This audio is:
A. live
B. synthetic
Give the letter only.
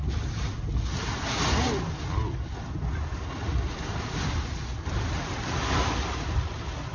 A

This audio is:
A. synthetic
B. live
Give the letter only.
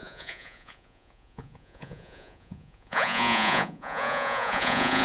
A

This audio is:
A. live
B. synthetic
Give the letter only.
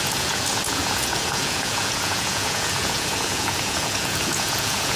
B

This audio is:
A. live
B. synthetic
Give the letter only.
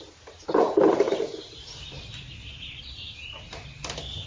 A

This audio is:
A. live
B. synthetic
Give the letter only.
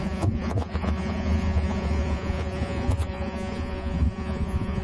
B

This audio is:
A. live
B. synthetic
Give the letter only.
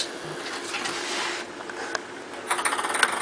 A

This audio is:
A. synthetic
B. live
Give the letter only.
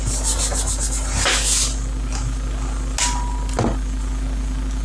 B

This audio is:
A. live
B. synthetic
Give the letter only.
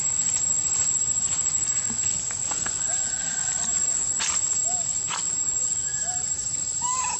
A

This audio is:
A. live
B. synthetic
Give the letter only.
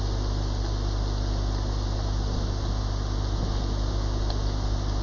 A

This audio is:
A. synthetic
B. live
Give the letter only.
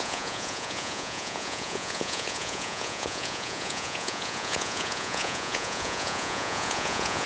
A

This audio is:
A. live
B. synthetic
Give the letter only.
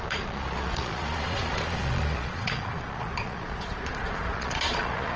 B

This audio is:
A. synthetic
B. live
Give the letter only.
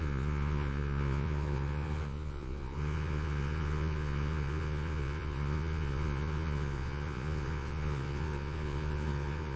A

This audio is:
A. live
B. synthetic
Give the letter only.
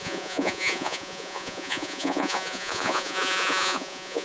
B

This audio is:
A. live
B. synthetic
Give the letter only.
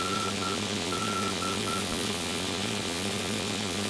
B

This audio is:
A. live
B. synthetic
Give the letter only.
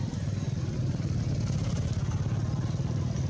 A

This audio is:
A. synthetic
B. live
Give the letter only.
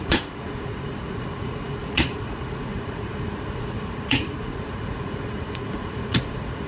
A